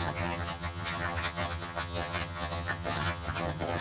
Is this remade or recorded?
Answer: remade